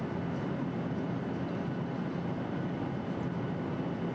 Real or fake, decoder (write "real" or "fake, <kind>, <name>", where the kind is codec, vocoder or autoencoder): real